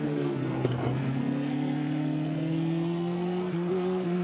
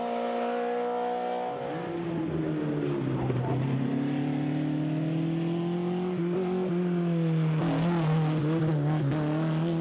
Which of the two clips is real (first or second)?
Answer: second